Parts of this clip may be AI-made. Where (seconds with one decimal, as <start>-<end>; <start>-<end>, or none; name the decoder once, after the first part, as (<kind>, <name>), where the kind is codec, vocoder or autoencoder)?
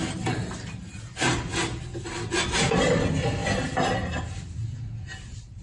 none